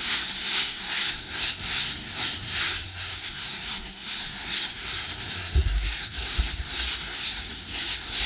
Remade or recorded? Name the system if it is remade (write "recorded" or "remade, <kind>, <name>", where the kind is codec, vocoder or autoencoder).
remade, codec, SNAC